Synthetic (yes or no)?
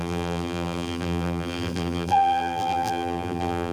yes